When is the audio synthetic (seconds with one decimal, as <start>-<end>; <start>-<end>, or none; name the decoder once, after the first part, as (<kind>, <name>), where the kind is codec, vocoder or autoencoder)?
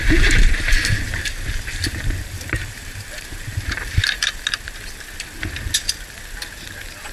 0.0-4.3 (vocoder, BigVGAN v2)